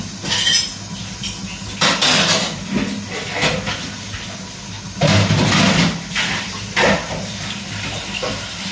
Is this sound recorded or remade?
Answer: recorded